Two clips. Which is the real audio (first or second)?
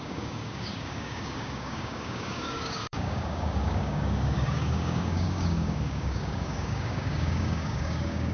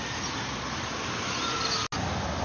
second